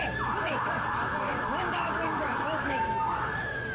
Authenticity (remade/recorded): remade